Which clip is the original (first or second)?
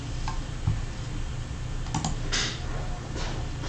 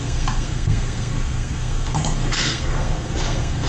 first